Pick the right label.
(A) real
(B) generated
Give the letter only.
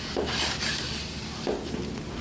A